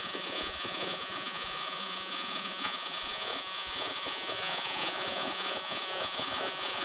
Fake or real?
fake